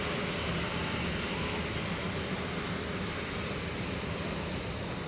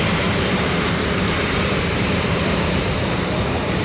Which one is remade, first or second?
second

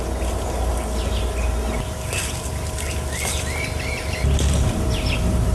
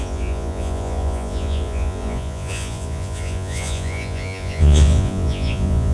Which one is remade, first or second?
second